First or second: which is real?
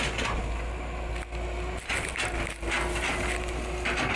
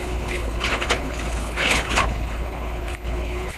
first